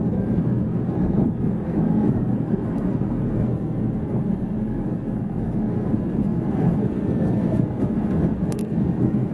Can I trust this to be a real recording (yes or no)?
no